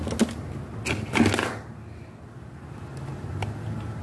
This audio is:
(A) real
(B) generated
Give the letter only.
A